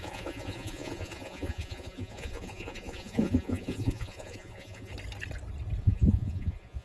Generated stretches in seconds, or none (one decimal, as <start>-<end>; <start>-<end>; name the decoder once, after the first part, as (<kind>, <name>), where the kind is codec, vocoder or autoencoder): 0.0-4.9 (vocoder, Vocos); 5.8-6.8